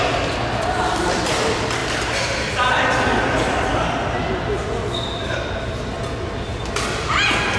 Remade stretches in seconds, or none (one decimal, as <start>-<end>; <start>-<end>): none